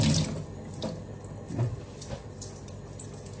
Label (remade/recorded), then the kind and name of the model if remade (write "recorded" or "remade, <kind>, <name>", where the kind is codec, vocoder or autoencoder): recorded